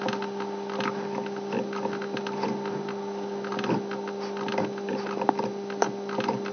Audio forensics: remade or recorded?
recorded